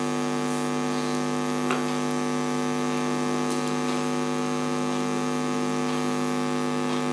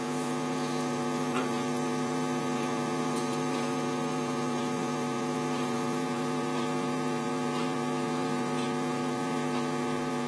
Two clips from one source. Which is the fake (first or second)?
second